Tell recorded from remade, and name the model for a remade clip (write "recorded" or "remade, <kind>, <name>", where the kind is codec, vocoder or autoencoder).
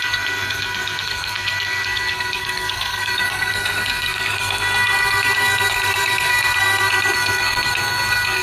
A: remade, codec, SNAC